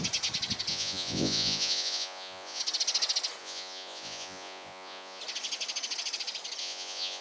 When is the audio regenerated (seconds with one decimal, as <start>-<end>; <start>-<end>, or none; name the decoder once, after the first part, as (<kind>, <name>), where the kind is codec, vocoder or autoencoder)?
0.7-2.6 (vocoder, Vocos); 3.4-5.2; 6.6-7.2